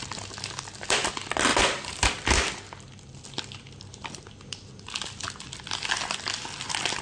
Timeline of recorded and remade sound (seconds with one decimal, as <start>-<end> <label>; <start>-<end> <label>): 0.0-1.5 recorded; 1.5-2.8 remade; 2.8-7.0 recorded